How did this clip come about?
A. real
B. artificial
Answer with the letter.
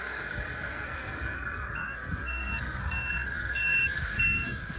B